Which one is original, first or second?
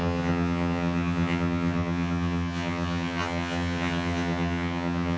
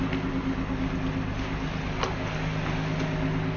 second